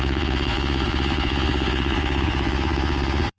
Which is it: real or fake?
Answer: fake